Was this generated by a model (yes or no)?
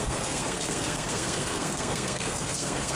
yes